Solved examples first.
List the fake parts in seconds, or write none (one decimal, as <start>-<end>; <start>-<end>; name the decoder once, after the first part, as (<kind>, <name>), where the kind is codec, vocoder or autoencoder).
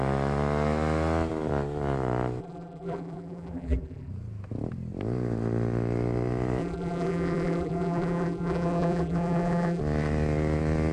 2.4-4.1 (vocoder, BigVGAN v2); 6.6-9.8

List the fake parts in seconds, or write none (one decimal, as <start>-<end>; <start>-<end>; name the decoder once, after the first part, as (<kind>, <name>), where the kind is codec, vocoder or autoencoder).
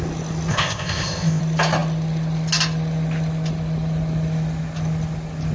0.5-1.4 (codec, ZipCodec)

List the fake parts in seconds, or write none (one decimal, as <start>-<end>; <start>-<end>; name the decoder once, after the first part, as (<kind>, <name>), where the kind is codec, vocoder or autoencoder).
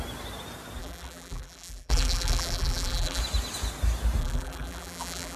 0.8-3.2 (vocoder, BigVGAN v2); 4.2-5.4